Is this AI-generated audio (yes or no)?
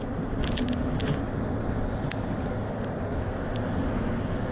no